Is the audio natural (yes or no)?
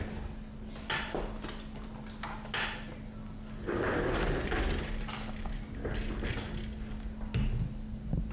yes